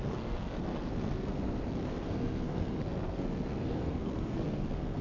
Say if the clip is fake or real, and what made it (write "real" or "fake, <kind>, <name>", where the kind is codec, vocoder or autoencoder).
fake, codec, SNAC